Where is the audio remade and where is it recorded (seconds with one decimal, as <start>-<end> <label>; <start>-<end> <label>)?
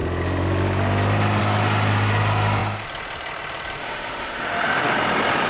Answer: 0.0-3.8 recorded; 3.8-4.9 remade; 4.9-5.5 recorded